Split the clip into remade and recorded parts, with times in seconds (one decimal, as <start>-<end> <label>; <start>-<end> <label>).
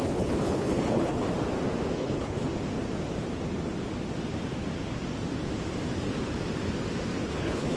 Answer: 0.0-1.3 remade; 1.3-1.9 recorded; 1.9-2.5 remade; 2.5-7.2 recorded; 7.2-7.8 remade